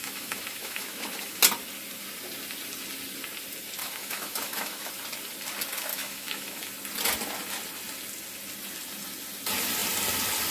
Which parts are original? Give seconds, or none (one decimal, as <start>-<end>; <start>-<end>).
1.4-3.8; 4.9-5.9; 6.7-10.5